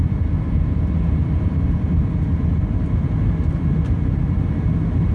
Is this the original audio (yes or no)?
yes